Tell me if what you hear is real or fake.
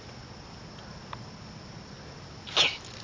real